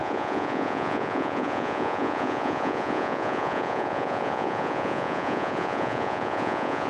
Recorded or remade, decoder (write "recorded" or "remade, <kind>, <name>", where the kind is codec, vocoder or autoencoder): remade, vocoder, Vocos